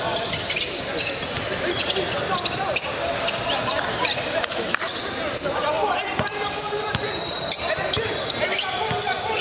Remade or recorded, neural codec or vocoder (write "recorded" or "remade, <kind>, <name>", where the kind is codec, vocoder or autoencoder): recorded